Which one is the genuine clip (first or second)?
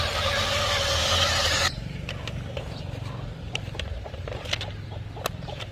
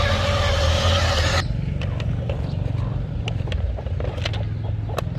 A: second